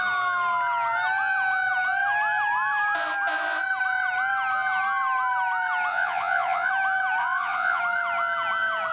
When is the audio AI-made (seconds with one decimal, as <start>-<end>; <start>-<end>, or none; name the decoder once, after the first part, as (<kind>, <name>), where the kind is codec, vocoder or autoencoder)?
5.9-6.7 (vocoder, Vocos); 7.2-7.8